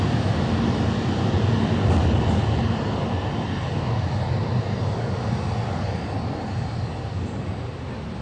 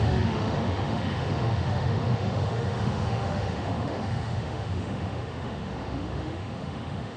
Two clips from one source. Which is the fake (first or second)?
second